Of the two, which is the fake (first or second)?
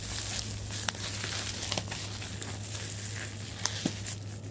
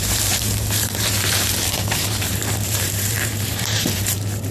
second